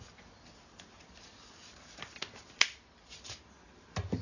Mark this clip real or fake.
real